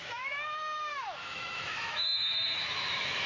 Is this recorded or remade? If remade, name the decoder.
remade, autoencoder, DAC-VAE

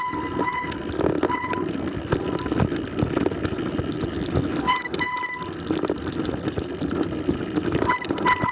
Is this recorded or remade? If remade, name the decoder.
recorded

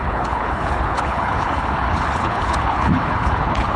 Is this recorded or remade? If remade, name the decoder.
remade, codec, HILCodec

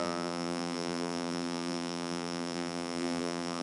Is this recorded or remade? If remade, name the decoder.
remade, vocoder, BigVGAN v2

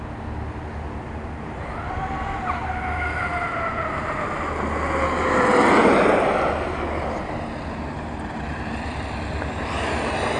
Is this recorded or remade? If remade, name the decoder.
recorded